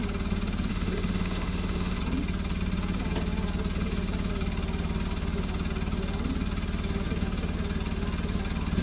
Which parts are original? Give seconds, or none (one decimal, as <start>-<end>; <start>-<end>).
0.0-0.7; 2.0-8.8